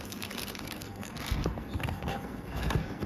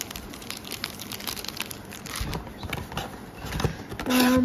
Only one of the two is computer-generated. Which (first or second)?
first